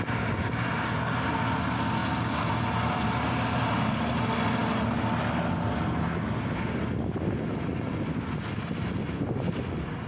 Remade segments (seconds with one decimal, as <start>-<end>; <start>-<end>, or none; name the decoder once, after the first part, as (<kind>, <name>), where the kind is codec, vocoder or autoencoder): none